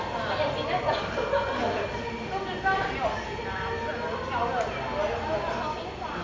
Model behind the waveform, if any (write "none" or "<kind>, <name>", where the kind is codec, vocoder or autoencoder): none